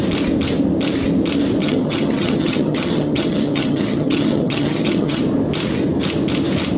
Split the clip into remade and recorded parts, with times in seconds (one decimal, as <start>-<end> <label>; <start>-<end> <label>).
0.0-1.6 recorded; 1.6-5.2 remade; 5.2-6.8 recorded